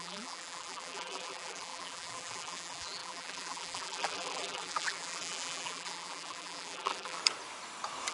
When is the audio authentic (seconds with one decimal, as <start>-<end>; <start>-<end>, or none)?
7.2-8.1